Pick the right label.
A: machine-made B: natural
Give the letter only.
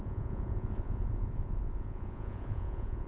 A